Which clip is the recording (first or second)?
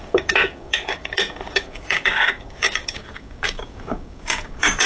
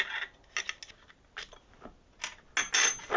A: second